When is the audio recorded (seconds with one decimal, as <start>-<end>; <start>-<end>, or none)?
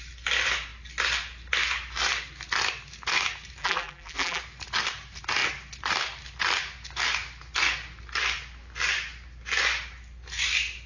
0.0-3.6; 4.4-10.9